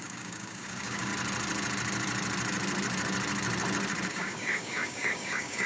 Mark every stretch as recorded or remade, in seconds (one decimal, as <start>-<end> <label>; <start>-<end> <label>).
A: 0.0-1.1 remade; 1.1-4.1 recorded; 4.1-5.7 remade